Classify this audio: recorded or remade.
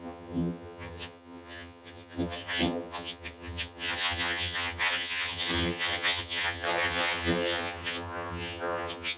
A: remade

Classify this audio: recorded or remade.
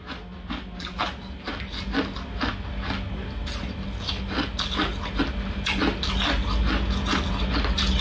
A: recorded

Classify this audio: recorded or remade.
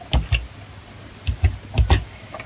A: recorded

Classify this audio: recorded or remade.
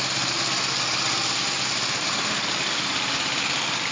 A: recorded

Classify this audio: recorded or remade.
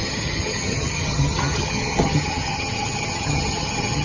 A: remade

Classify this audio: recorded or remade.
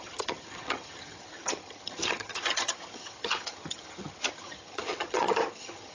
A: remade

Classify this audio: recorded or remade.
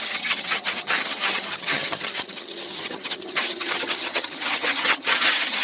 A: remade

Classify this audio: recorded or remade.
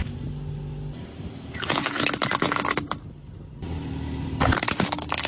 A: recorded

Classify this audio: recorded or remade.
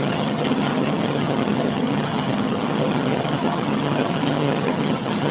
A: remade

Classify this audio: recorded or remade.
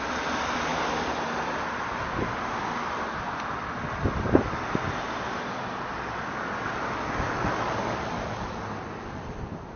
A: recorded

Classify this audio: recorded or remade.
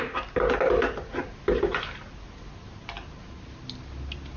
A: recorded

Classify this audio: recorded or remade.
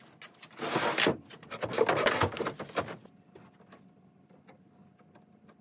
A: recorded